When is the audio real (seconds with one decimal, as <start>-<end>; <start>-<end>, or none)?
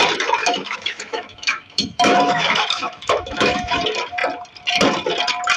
0.0-0.4; 3.8-5.6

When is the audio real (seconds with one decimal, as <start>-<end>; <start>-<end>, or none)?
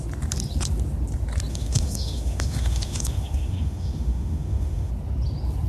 0.0-1.5; 4.9-5.7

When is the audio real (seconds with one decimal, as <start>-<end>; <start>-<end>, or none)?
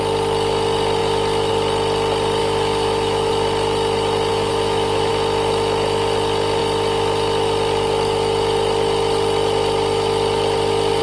0.0-2.4; 3.3-4.3; 5.1-11.0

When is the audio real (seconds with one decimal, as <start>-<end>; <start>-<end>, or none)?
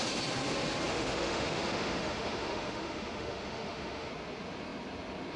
0.0-0.9; 4.1-5.4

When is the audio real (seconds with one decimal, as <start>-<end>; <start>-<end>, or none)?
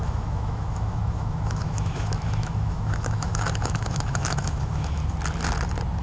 5.0-6.0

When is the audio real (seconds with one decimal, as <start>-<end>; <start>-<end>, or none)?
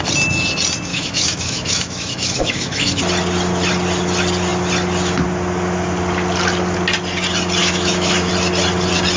0.0-0.9; 3.0-7.6; 8.3-9.2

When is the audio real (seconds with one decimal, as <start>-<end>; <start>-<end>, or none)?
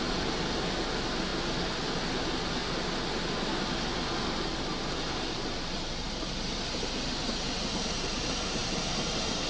0.0-9.5